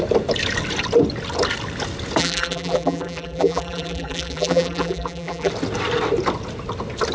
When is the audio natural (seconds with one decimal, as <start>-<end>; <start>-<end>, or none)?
0.0-2.2; 5.5-7.1

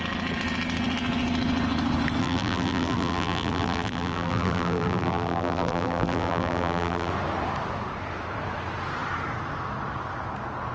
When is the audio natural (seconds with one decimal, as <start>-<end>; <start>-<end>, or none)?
0.0-2.2; 7.1-10.7

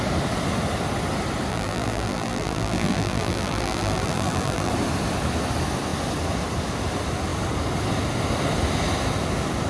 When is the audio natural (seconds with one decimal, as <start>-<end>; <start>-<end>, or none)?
0.0-1.5; 4.7-9.7

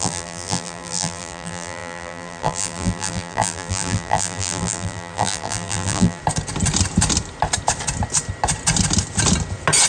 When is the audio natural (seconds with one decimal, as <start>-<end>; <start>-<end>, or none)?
6.2-9.9

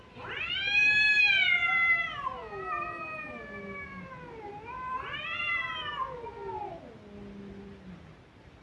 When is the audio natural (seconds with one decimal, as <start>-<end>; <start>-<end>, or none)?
0.0-8.6

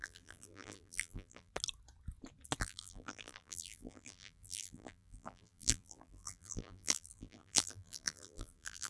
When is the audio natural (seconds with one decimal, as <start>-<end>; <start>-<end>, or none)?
1.5-2.6

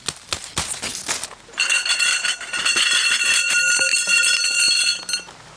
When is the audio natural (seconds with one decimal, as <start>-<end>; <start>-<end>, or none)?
0.0-5.6

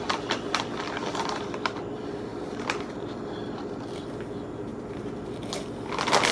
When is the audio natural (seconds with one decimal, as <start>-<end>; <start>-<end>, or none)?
0.0-4.7; 5.3-6.3